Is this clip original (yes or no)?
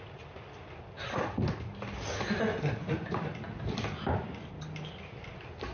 yes